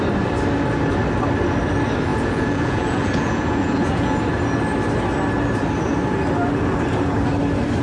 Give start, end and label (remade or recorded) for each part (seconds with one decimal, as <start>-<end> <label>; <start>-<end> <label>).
0.0-2.1 recorded; 2.1-4.2 remade; 4.2-7.8 recorded

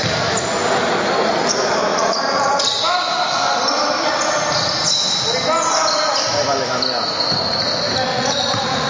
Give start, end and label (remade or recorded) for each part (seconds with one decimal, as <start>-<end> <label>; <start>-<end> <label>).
0.0-1.9 recorded; 1.9-2.5 remade; 2.5-8.1 recorded; 8.1-8.9 remade

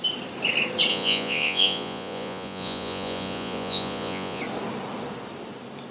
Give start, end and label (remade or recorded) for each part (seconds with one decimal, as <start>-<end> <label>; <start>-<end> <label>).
0.0-0.9 recorded; 0.9-4.4 remade; 4.4-5.9 recorded

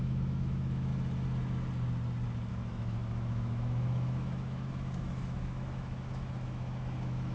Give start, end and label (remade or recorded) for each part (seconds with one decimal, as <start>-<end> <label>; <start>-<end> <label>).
0.0-0.9 remade; 0.9-2.5 recorded; 2.5-7.3 remade